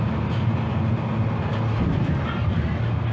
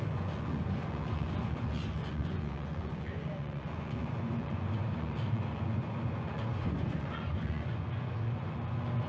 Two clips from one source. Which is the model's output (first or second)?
second